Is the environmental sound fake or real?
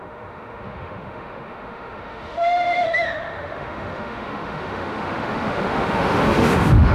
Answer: fake